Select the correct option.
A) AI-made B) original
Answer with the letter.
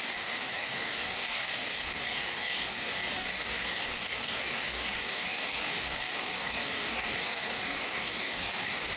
A